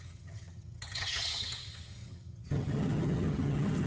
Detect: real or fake fake